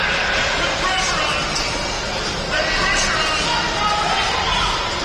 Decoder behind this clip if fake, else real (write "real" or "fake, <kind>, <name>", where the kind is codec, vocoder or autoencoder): real